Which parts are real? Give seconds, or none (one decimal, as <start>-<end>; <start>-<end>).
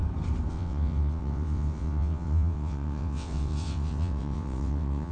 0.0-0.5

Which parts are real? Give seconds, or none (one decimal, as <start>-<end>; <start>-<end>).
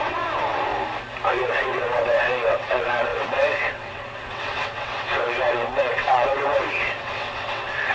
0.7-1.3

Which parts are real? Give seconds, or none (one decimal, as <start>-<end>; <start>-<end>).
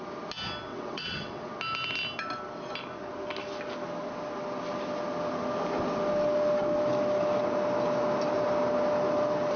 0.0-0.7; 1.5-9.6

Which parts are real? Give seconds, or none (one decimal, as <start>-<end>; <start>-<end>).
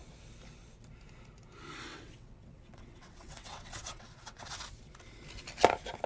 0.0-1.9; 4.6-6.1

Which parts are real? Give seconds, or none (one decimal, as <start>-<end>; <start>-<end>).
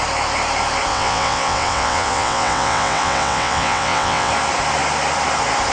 0.0-0.9; 4.3-5.7